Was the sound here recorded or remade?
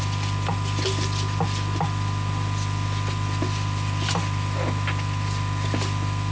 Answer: recorded